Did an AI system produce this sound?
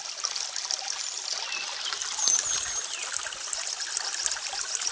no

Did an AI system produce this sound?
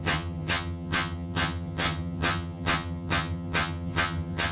yes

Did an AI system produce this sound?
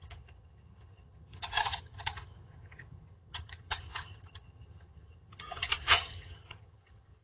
yes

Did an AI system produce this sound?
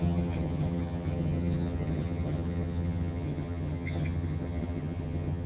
yes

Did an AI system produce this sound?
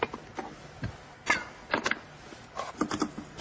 no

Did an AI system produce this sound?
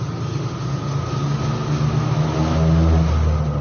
no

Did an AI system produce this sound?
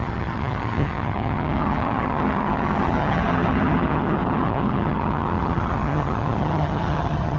yes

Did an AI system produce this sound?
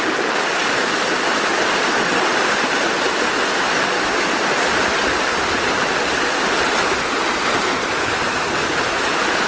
no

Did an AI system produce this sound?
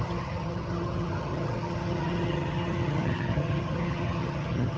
yes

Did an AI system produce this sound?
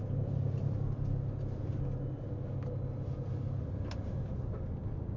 no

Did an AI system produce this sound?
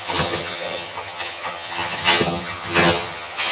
yes